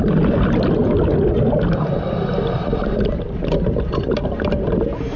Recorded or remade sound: recorded